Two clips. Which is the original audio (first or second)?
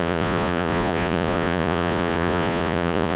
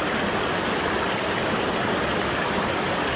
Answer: second